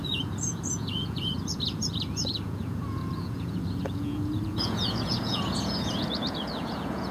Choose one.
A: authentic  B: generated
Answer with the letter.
B